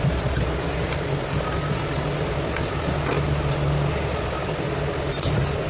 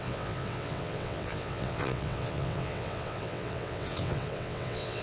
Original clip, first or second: first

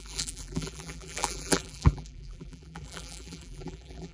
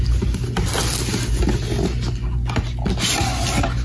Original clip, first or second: second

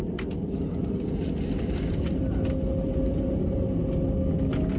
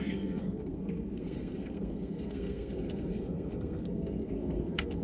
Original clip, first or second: first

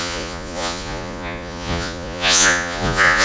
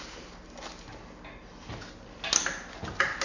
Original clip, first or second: second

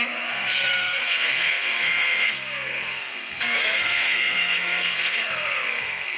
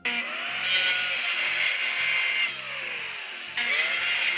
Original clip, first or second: second